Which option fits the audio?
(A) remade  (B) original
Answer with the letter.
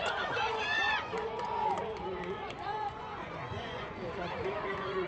A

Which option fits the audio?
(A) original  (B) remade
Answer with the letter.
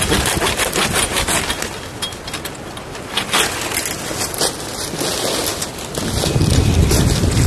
A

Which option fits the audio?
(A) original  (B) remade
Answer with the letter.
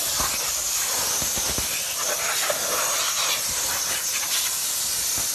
A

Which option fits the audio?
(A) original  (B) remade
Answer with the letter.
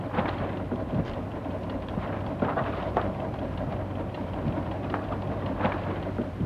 B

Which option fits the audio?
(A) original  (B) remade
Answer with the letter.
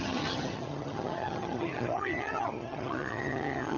B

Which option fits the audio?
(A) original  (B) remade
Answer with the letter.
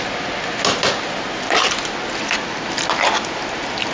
A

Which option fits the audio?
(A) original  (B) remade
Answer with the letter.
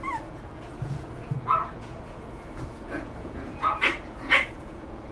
B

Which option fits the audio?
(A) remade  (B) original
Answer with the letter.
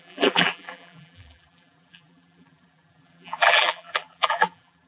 A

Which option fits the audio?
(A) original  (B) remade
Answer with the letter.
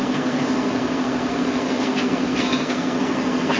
B